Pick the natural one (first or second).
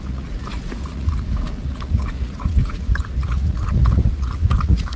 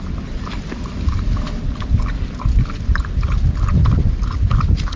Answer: second